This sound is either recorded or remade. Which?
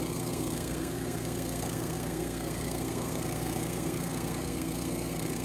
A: remade